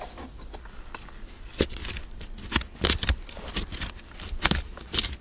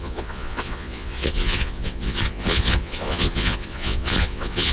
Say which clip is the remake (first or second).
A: second